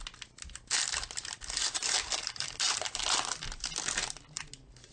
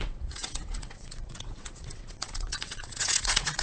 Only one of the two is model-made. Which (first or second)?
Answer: second